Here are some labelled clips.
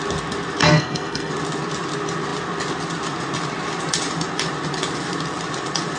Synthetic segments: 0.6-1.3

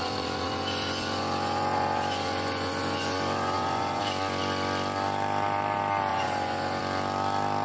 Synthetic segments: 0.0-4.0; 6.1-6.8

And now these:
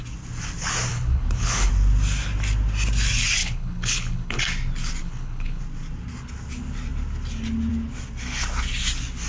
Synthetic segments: 0.9-1.7; 3.4-4.4; 5.0-5.6